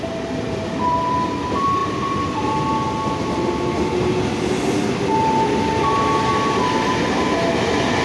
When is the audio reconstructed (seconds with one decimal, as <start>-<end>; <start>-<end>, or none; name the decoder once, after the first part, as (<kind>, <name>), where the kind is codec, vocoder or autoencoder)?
none